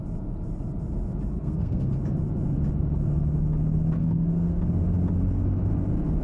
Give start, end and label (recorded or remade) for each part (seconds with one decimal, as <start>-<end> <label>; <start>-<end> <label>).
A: 0.0-1.3 recorded; 1.3-1.9 remade; 1.9-4.0 recorded; 4.0-4.6 remade; 4.6-6.2 recorded